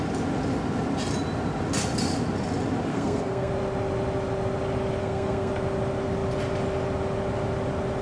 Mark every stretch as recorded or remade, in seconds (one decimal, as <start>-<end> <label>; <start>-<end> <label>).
0.0-2.9 recorded; 2.9-3.5 remade; 3.5-5.0 recorded; 5.0-5.5 remade; 5.5-8.0 recorded